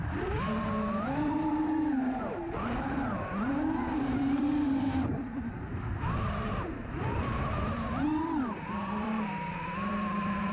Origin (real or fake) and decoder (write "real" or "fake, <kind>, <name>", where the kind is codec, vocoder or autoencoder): fake, vocoder, BigVGAN v2